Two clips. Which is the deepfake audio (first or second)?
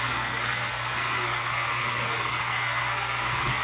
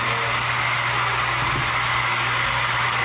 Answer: first